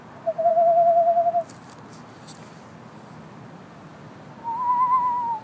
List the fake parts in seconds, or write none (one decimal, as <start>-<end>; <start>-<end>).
none